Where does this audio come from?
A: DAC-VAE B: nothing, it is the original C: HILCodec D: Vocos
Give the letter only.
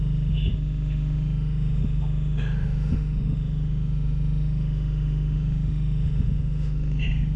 A